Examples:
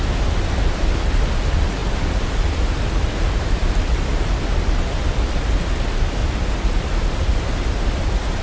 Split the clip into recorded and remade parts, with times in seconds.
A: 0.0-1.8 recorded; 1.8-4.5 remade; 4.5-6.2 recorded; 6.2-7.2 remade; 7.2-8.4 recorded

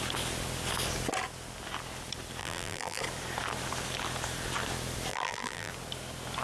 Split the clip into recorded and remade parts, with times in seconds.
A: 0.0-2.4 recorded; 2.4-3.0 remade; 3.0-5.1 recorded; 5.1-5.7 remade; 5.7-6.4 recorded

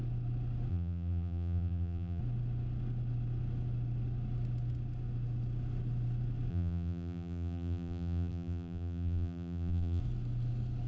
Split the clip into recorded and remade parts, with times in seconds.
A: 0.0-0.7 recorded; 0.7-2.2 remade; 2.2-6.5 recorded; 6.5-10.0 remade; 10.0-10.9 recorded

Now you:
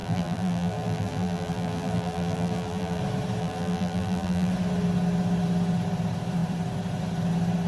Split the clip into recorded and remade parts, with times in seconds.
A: 0.0-3.0 remade; 3.0-3.4 recorded; 3.4-4.5 remade; 4.5-7.7 recorded

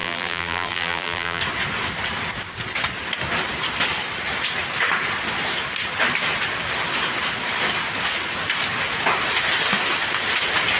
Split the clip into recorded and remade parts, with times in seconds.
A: 0.0-1.4 remade; 1.4-10.8 recorded